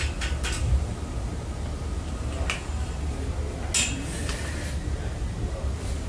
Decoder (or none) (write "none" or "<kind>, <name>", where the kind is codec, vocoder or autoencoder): none